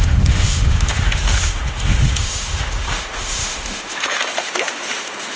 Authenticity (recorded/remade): remade